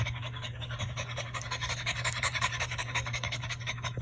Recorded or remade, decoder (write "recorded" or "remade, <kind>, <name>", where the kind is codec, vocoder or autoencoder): remade, codec, DAC